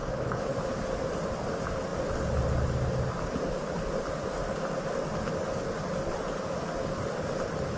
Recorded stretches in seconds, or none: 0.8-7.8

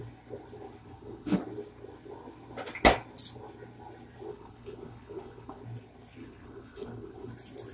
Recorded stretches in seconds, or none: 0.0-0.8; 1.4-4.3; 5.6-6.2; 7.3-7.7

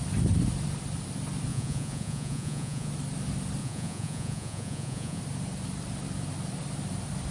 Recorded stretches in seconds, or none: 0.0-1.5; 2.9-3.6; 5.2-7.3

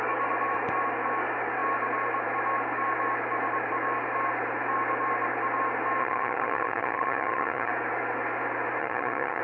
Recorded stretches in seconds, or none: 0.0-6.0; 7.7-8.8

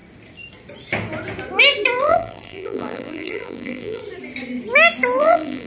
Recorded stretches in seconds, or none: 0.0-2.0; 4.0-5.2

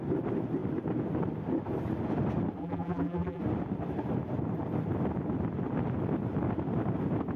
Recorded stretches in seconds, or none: 0.0-2.6; 3.4-7.4

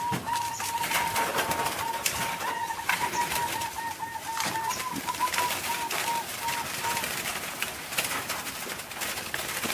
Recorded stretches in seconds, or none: 0.0-1.3; 2.5-9.7